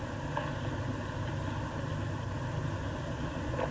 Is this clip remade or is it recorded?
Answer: recorded